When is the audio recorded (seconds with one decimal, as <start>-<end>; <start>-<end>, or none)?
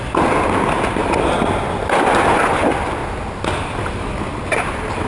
3.0-3.6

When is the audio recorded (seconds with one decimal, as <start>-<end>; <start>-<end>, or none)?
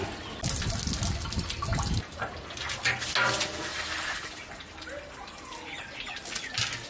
0.0-1.7; 2.3-3.7; 5.8-6.9